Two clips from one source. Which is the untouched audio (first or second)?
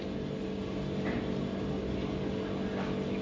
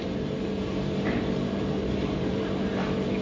first